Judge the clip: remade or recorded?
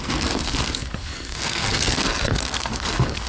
remade